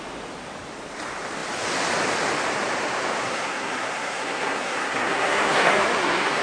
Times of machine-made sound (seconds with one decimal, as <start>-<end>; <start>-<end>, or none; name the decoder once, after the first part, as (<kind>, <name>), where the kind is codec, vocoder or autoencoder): 3.2-6.4 (codec, SNAC)